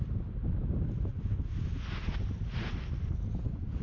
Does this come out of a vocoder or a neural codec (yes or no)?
no